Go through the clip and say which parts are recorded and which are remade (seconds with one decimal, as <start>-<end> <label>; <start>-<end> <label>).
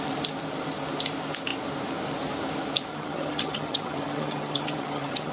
0.0-2.9 recorded; 2.9-5.3 remade